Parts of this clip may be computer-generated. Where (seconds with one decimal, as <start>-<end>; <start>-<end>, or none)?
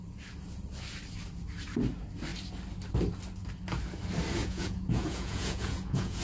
4.4-6.2